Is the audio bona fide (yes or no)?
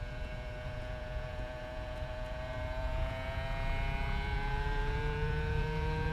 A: no